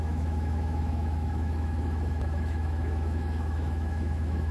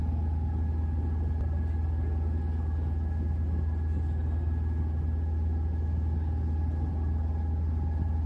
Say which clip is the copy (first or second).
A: first